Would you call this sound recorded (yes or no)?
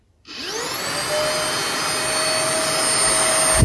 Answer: yes